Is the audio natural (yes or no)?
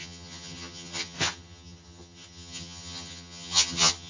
no